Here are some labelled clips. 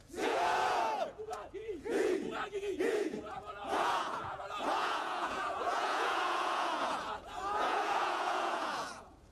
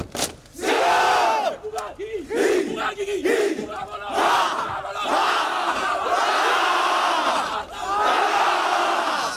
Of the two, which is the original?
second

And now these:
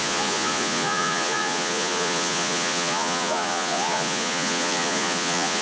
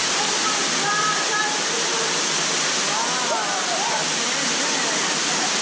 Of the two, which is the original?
second